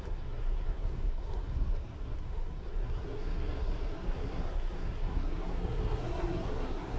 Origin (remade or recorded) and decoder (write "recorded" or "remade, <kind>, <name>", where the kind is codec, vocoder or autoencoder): remade, codec, SNAC